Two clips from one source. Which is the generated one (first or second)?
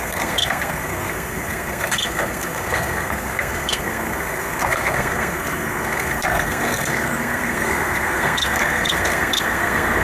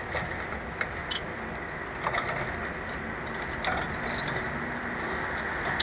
first